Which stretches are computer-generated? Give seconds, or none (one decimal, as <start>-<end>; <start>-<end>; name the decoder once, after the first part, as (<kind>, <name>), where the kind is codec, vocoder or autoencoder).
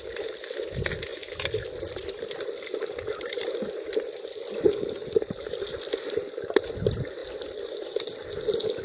1.1-5.0 (vocoder, BigVGAN v2)